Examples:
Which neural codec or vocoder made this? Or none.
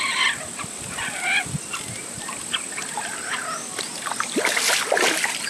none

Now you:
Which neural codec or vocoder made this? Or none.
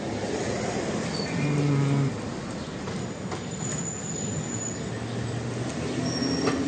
none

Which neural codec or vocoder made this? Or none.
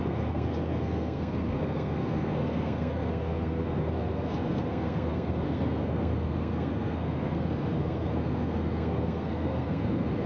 codec, SNAC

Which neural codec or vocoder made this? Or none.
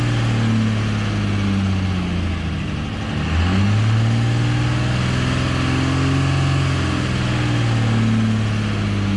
none